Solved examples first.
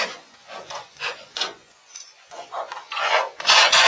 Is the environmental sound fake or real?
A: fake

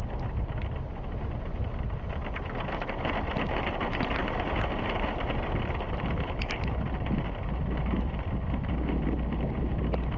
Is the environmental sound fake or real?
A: real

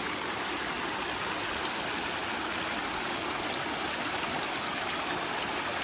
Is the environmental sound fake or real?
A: real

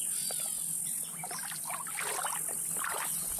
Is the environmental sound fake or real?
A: real